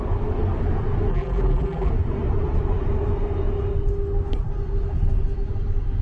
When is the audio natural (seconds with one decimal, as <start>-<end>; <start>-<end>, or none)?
0.0-1.1; 1.9-6.0